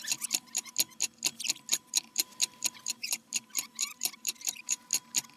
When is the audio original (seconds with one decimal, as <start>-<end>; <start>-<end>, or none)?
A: 0.7-1.7; 4.9-5.4